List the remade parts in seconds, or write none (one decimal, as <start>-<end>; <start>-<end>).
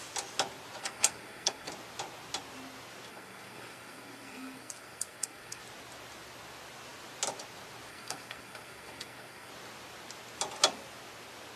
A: 0.8-1.7; 3.1-5.6; 7.9-9.5